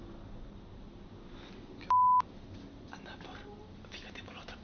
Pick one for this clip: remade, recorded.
recorded